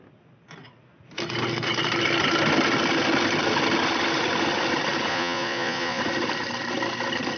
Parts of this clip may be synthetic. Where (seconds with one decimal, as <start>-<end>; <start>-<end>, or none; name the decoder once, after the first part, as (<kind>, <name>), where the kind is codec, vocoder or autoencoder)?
5.1-6.0 (vocoder, Vocos)